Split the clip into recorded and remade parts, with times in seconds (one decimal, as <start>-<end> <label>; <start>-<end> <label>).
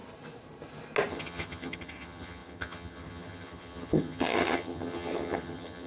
0.0-1.1 recorded; 1.1-5.9 remade